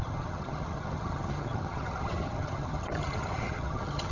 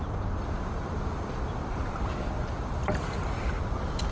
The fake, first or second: first